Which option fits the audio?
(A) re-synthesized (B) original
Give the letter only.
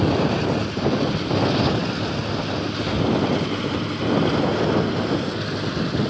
B